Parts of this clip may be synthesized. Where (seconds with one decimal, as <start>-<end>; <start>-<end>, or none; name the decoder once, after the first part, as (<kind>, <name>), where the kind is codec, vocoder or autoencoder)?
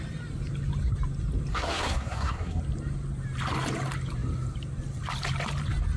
1.5-2.6 (codec, SNAC)